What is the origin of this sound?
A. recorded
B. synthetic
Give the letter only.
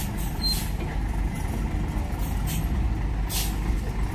A